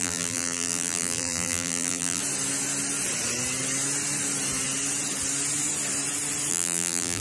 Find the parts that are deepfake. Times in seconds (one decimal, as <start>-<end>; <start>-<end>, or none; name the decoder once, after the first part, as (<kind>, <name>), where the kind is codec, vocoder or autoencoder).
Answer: 0.0-2.2 (vocoder, BigVGAN v2); 6.5-7.2